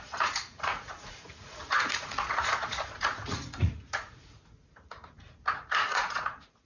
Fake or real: fake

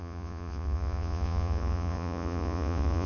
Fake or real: fake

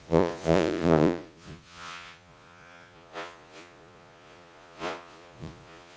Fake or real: fake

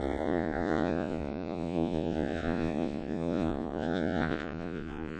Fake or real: fake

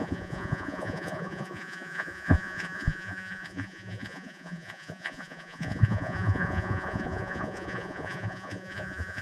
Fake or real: fake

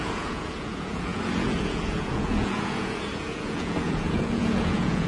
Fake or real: fake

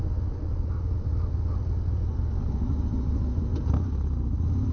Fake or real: real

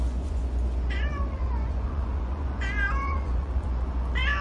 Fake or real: fake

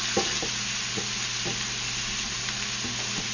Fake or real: real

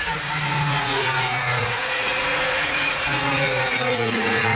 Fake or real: fake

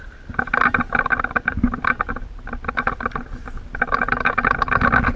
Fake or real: real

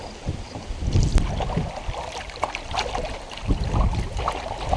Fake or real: real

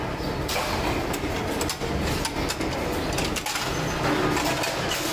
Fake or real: real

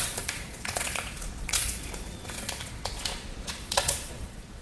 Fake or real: fake